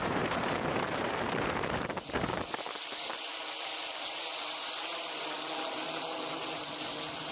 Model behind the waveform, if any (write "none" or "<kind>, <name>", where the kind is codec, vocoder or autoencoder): vocoder, BigVGAN v2